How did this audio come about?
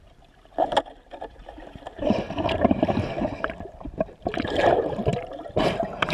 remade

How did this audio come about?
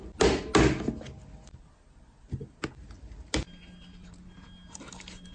recorded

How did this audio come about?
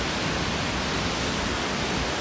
recorded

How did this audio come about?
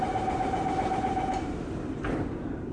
remade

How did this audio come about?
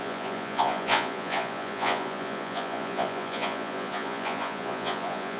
remade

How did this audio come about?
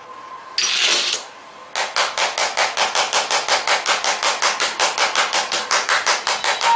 recorded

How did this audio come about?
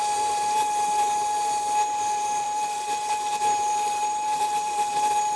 remade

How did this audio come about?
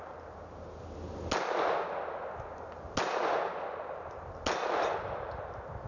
recorded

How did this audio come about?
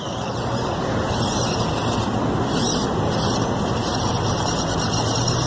recorded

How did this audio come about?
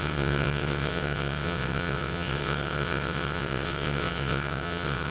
remade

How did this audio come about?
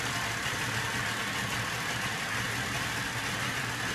recorded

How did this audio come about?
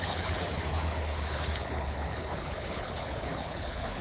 remade